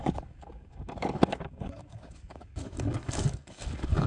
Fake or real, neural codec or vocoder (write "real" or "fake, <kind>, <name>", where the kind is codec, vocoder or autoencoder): fake, codec, DAC